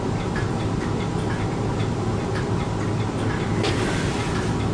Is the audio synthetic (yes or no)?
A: no